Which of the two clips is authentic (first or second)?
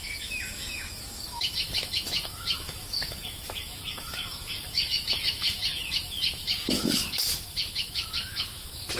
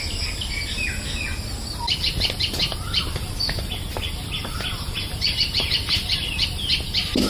second